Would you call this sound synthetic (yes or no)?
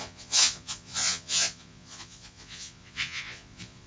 yes